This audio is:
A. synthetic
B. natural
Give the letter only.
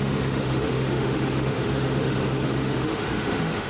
A